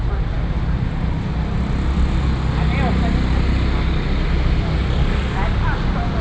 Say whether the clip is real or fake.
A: real